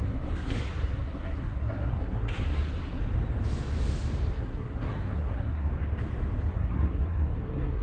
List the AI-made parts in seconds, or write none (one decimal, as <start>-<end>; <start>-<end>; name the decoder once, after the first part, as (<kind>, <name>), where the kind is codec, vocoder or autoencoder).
0.0-3.0 (codec, SNAC); 4.3-5.7; 6.5-7.8